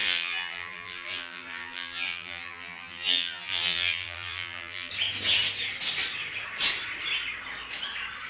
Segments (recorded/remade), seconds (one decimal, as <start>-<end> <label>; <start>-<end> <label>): 0.0-4.9 remade; 4.9-8.3 recorded